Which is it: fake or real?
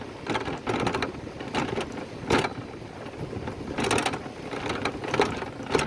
real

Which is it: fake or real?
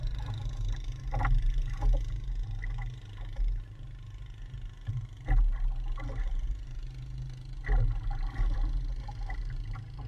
real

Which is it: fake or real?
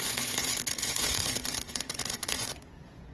fake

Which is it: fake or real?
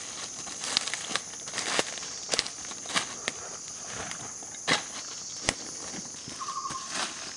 real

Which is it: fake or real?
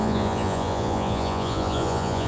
fake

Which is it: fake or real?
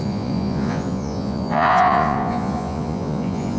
fake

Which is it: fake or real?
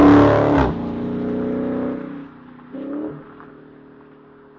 real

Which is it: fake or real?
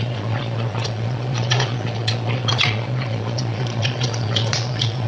fake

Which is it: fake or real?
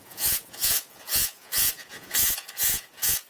fake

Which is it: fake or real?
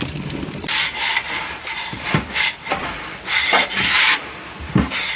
real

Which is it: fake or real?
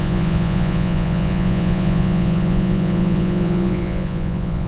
fake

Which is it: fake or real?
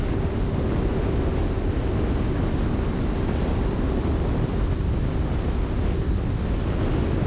real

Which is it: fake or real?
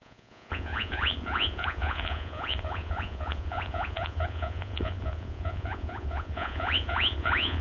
fake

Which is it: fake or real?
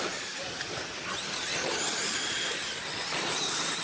real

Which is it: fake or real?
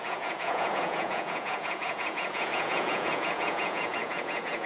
fake